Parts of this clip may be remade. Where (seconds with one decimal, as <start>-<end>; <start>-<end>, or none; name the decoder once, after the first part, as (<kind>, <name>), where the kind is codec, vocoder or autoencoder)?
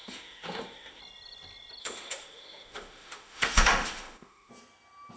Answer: 0.0-1.0 (autoencoder, DAC-VAE); 1.8-4.5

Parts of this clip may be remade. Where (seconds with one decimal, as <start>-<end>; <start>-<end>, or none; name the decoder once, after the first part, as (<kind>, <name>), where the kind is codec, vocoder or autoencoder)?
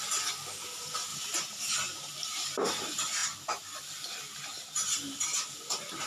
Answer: 1.1-1.7 (vocoder, BigVGAN v2)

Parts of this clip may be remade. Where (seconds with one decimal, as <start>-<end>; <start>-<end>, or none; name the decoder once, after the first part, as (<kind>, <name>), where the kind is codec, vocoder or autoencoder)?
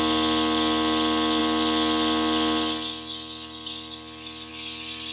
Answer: none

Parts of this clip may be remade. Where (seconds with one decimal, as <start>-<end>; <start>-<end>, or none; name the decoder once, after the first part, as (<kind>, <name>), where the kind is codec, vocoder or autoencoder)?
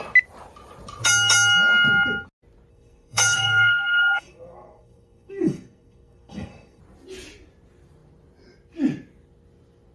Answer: 2.7-6.8 (codec, SNAC)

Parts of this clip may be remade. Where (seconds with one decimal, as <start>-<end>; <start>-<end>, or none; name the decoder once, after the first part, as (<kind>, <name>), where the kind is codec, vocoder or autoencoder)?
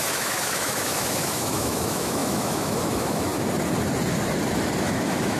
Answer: 0.0-3.3 (autoencoder, DAC-VAE); 4.8-5.4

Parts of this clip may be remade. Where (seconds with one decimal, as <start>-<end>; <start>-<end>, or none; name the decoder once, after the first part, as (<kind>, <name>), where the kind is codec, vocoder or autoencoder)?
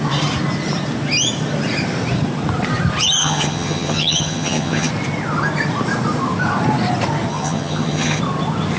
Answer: 3.2-4.9 (vocoder, HiFi-GAN); 7.3-8.2